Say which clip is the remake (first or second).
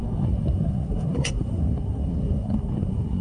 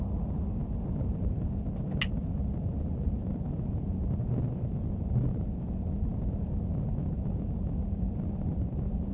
first